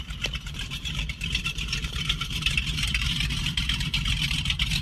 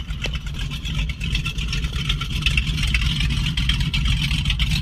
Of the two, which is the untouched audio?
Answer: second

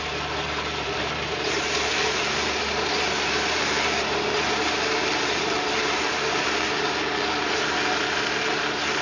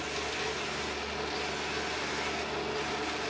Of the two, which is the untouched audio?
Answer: second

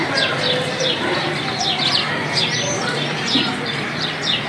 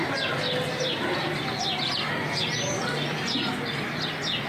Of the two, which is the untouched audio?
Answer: second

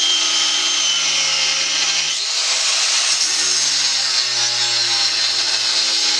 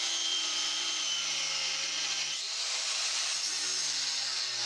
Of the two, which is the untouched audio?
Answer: first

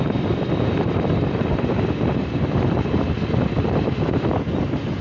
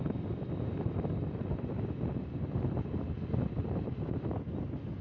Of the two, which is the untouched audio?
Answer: second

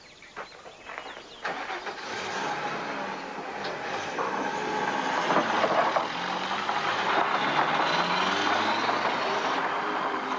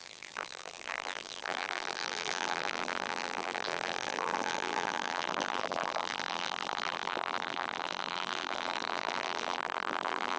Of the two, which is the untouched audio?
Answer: first